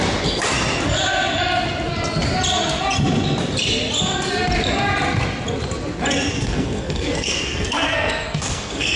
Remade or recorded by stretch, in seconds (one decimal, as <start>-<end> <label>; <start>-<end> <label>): 0.0-6.3 recorded; 6.3-9.0 remade